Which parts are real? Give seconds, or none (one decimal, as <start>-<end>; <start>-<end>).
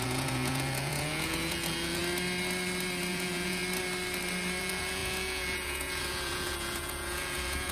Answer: 2.0-3.1; 3.6-4.6